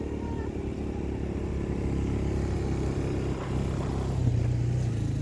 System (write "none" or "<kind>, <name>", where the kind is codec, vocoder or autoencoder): none